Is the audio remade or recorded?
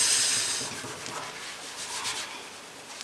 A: recorded